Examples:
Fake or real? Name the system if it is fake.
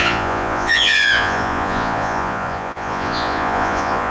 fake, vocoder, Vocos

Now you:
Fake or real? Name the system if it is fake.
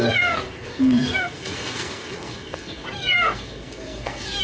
fake, codec, SNAC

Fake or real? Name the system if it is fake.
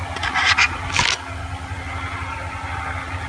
real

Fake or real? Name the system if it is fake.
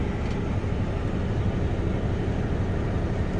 real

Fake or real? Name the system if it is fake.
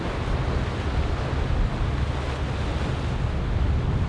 real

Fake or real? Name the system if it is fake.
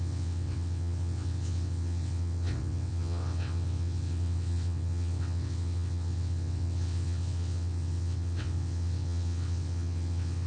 fake, vocoder, WaveNeXt